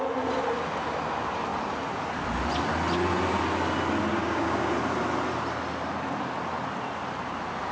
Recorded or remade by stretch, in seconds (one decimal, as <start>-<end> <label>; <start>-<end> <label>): 0.0-4.1 recorded; 4.1-4.7 remade; 4.7-7.7 recorded